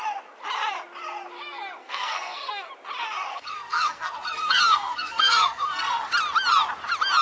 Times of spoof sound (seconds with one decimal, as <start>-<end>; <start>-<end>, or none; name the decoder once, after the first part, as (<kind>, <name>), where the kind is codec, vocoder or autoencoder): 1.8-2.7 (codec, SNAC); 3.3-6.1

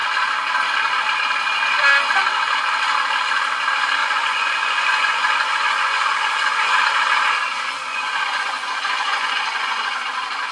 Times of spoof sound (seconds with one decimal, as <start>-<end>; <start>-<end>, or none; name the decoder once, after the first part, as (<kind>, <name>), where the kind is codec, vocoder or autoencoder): 4.0-6.8 (vocoder, Vocos); 7.9-10.0

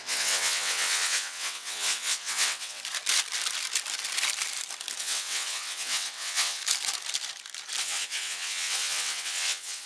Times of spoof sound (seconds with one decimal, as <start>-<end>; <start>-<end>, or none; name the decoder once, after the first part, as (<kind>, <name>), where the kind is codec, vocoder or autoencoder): 0.0-2.8 (vocoder, WaveNeXt); 5.0-6.6; 7.8-9.9